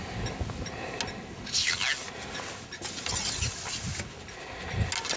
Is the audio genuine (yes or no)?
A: yes